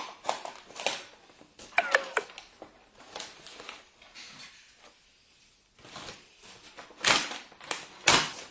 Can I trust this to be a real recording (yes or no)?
yes